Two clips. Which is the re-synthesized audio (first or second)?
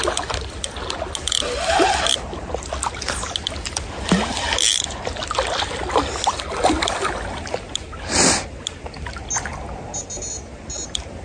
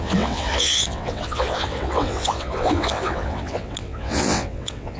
second